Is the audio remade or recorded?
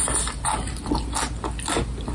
recorded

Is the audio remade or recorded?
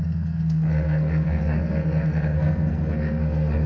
remade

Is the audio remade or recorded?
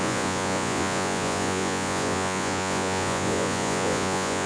remade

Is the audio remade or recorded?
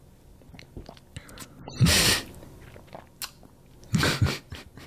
recorded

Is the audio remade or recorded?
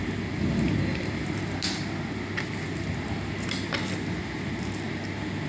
recorded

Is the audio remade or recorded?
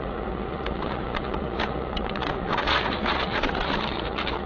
remade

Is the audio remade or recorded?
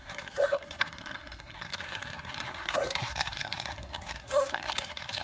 remade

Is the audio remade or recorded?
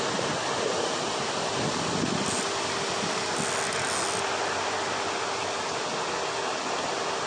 recorded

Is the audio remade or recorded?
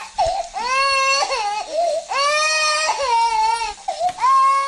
recorded